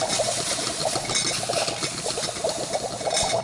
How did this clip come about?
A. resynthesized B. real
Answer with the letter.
B